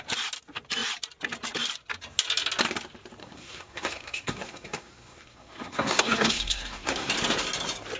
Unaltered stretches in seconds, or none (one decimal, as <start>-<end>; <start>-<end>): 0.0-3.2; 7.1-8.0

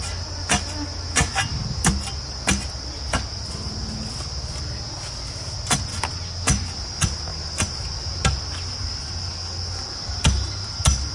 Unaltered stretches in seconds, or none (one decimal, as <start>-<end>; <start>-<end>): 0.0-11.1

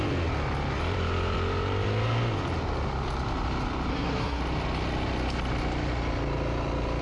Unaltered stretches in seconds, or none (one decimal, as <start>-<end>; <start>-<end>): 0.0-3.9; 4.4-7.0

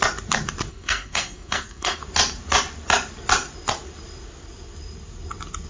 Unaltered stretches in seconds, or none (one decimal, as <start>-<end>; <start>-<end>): 0.0-0.7; 2.0-5.7